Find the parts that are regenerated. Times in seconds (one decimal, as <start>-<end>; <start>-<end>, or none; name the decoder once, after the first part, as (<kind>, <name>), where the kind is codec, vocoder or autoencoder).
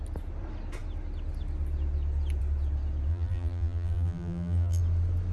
3.1-4.8 (vocoder, BigVGAN v2)